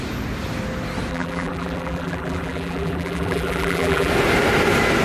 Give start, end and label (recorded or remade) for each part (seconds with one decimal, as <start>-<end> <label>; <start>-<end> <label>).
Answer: 0.0-1.1 recorded; 1.1-4.1 remade; 4.1-5.0 recorded